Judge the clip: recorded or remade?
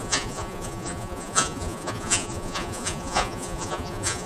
remade